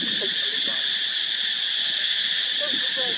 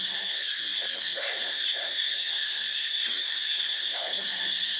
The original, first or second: first